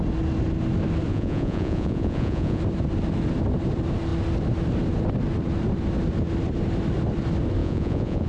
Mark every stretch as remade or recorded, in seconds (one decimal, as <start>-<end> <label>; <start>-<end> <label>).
0.0-1.1 recorded; 1.1-2.6 remade; 2.6-7.6 recorded; 7.6-8.3 remade